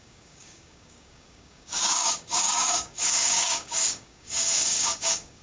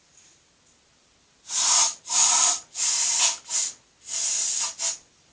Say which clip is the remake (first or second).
first